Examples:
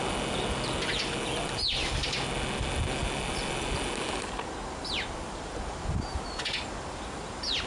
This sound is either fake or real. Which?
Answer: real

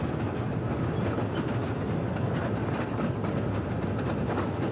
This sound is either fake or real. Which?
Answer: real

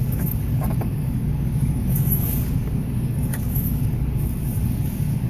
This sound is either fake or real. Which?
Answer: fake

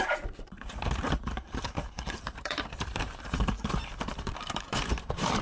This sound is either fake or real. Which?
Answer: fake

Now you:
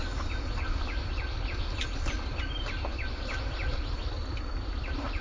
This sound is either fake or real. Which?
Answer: real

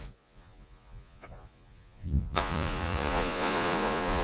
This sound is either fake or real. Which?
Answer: fake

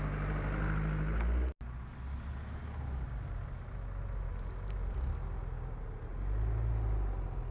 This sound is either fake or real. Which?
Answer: real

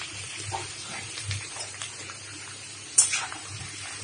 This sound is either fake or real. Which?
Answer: fake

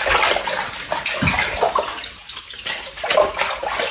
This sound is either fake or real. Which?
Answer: real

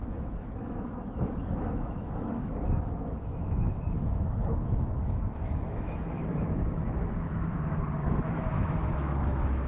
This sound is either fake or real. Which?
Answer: fake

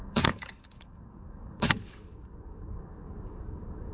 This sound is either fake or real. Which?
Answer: fake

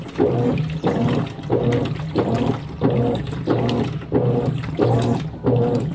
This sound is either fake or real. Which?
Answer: real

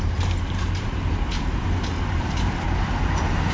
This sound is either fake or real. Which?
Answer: fake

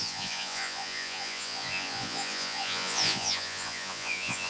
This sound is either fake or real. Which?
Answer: fake